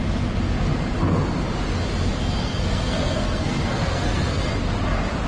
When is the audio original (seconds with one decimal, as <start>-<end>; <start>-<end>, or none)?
0.0-2.4; 4.4-5.3